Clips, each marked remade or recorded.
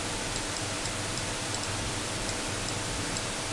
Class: recorded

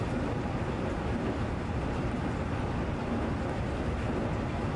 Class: recorded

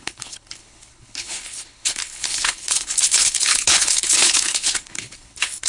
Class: remade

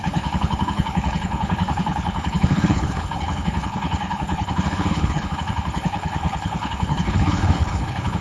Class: remade